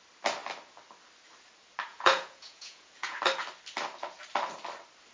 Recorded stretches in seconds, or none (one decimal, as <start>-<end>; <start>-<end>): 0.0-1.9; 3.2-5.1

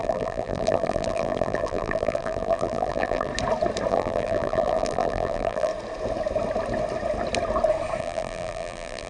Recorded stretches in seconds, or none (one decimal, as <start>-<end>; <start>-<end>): 3.3-3.9; 5.7-8.0

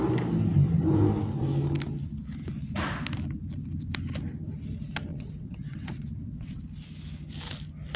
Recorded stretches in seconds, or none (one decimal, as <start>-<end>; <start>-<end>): 0.0-5.1; 6.6-8.0